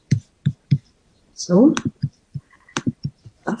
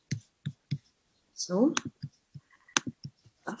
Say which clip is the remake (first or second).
first